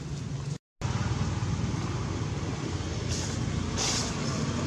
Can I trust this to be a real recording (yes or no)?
yes